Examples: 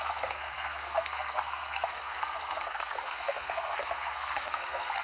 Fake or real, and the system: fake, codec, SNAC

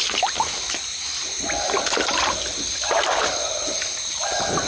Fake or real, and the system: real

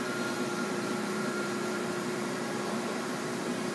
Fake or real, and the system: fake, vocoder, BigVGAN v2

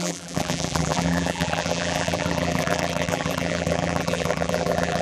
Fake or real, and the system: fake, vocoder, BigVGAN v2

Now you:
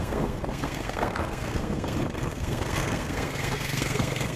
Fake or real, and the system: fake, codec, SNAC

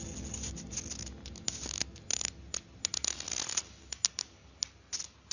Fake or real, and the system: real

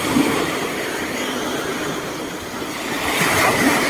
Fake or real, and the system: fake, vocoder, BigVGAN v2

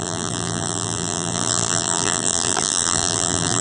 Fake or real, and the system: fake, vocoder, BigVGAN v2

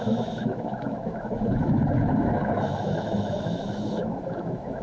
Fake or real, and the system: fake, autoencoder, DAC-VAE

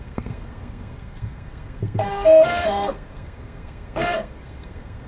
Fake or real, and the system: fake, codec, SNAC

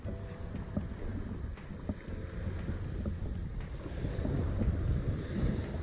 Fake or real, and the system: real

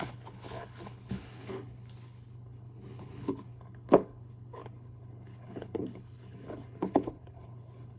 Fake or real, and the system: fake, codec, HILCodec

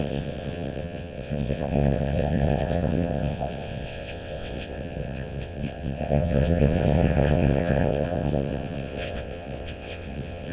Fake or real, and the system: fake, vocoder, WaveNeXt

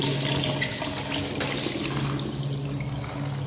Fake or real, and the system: real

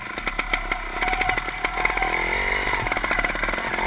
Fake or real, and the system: real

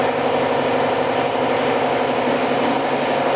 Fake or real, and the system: real